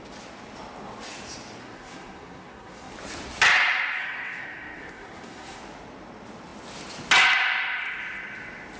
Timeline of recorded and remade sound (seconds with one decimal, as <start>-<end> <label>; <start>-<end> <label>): 0.0-1.6 recorded; 1.6-2.9 remade; 2.9-4.0 recorded; 4.0-5.6 remade; 5.6-8.8 recorded